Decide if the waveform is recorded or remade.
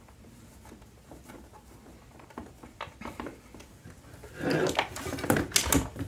recorded